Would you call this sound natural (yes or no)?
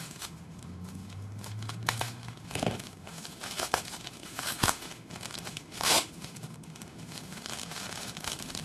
no